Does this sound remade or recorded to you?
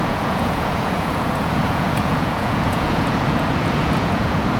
remade